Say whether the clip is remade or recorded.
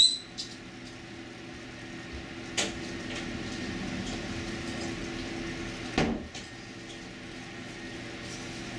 recorded